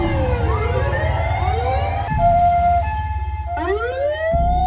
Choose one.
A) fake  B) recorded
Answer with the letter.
A